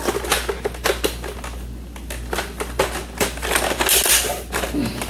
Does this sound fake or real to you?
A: real